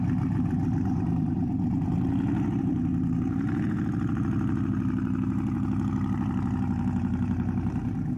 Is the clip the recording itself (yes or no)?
no